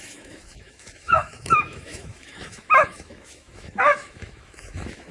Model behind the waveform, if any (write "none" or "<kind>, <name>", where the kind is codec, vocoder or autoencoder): autoencoder, DAC-VAE